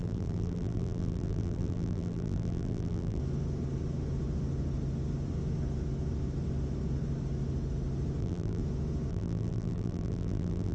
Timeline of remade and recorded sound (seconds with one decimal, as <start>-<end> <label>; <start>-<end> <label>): 0.0-3.2 remade; 3.2-8.2 recorded; 8.2-8.6 remade; 8.6-9.1 recorded; 9.1-10.7 remade